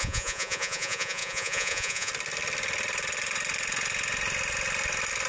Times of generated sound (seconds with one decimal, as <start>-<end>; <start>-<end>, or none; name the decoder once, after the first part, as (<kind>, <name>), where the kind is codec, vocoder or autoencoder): 0.0-2.1 (vocoder, Vocos)